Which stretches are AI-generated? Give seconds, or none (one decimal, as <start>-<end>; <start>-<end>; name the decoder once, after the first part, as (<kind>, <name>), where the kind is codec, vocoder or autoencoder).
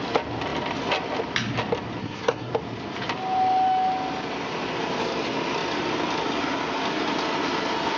2.0-2.5 (codec, SNAC)